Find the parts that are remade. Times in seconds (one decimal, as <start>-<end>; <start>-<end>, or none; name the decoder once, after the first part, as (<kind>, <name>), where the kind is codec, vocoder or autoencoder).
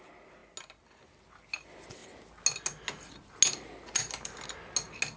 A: none